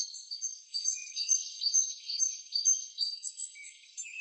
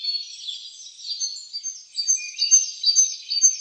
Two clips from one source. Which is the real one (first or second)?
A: second